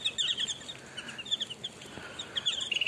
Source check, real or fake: real